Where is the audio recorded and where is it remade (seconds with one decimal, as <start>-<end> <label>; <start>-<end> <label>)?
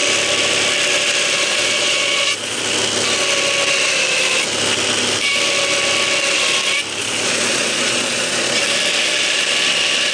0.0-1.5 recorded; 1.5-2.6 remade; 2.6-7.0 recorded; 7.0-8.6 remade; 8.6-10.1 recorded